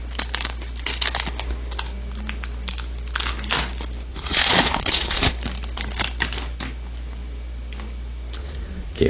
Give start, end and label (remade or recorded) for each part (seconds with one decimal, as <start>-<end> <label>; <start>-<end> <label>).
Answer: 0.0-4.1 recorded; 4.1-5.3 remade; 5.3-8.4 recorded; 8.4-9.1 remade